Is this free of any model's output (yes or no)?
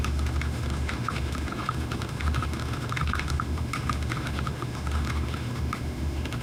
no